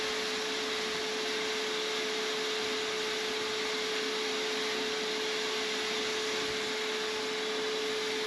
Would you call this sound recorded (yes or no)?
yes